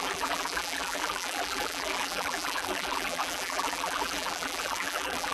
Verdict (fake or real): fake